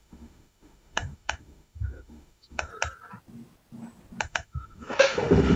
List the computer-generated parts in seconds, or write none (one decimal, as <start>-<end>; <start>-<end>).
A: 0.0-2.7; 4.2-5.6